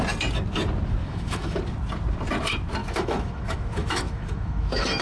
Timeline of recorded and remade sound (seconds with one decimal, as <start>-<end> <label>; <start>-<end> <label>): 0.0-1.0 recorded; 1.0-1.6 remade; 1.6-2.8 recorded; 2.8-5.0 remade